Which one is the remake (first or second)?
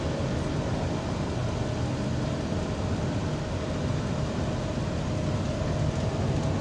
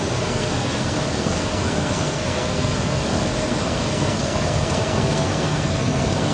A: second